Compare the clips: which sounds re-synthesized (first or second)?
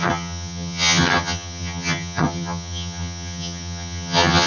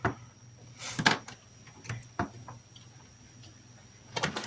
first